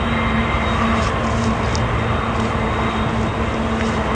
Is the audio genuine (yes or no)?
yes